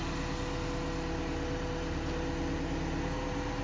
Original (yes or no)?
yes